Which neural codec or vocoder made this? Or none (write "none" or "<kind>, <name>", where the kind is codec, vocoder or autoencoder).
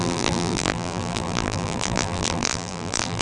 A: vocoder, BigVGAN v2